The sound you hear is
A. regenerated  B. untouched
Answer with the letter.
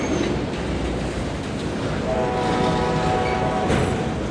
B